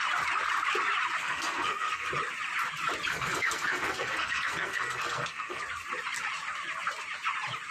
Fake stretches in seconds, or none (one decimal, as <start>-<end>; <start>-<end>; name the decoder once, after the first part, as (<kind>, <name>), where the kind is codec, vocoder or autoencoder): 1.2-2.1 (codec, SNAC); 3.1-5.6

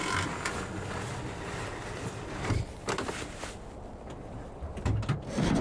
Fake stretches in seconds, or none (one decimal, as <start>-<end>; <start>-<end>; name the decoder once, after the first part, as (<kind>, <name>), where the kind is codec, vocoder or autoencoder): none

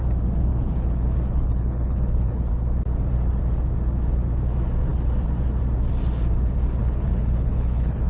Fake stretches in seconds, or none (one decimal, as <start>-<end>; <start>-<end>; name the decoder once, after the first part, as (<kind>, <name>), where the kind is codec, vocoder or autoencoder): 0.5-2.5 (codec, HILCodec); 6.8-8.1

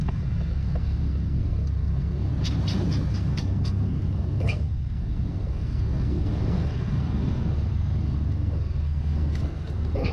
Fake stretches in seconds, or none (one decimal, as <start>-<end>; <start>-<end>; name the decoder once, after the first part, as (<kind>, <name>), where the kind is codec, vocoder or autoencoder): 0.0-2.3 (codec, SNAC); 3.1-10.1

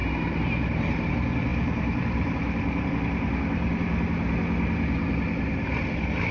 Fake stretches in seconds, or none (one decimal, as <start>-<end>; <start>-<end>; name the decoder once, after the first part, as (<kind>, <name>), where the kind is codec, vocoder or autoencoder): 0.0-1.1 (vocoder, BigVGAN v2); 1.5-2.9

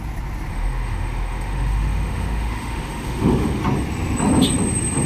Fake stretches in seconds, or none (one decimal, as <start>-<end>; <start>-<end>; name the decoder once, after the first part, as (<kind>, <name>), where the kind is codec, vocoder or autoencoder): 0.5-3.6 (autoencoder, DAC-VAE)

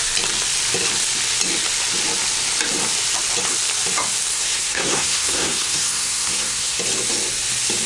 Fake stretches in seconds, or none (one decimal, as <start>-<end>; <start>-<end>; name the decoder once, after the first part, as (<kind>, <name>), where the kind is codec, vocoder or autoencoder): 4.3-6.8 (codec, SNAC)

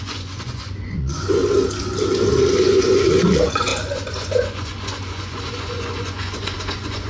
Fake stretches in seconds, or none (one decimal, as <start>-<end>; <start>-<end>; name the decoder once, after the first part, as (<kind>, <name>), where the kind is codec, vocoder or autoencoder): 0.0-1.4 (vocoder, Vocos); 2.6-7.1